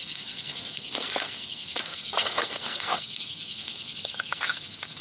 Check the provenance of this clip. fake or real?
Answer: fake